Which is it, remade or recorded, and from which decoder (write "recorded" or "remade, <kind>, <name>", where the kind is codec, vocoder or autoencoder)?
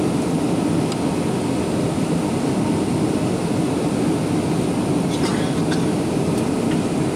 recorded